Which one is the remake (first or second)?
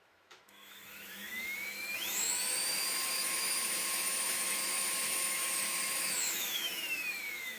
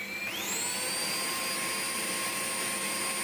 first